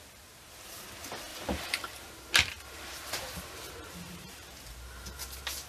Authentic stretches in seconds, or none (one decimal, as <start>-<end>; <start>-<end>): 0.0-1.3; 4.7-5.7